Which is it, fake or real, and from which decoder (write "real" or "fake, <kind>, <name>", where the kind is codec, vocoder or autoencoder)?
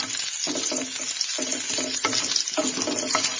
real